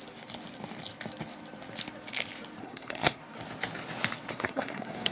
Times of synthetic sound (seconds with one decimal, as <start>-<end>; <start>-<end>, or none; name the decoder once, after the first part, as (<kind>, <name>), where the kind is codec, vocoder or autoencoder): 2.6-3.2 (codec, SNAC); 4.3-5.1